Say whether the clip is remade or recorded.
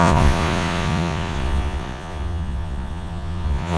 remade